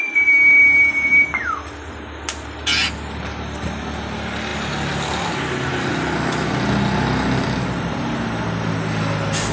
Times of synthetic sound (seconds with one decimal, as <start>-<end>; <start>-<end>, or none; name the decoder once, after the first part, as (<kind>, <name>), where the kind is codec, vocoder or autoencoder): none